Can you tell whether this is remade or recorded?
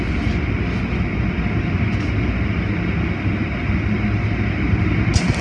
recorded